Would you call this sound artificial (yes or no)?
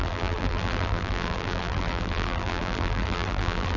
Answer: yes